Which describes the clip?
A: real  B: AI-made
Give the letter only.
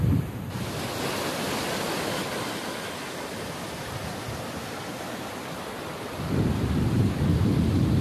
A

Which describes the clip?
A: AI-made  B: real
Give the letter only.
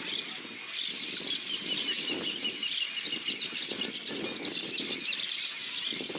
B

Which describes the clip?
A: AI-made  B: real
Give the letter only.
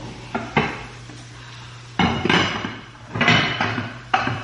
A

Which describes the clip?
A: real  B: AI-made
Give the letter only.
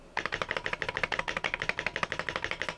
A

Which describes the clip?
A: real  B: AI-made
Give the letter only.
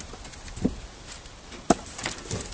A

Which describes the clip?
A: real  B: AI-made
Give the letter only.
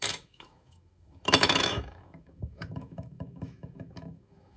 B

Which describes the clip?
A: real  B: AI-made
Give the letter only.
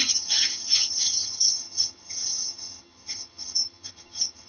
B